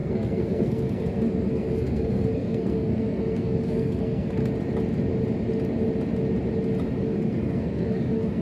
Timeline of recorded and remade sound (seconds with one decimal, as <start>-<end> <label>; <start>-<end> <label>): 0.0-4.4 remade; 4.4-7.0 recorded; 7.0-8.4 remade